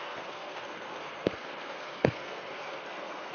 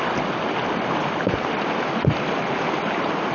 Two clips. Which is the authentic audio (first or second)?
second